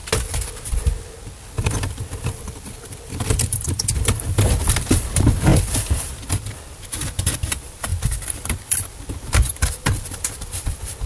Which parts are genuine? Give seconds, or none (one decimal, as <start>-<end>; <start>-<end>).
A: 0.0-1.8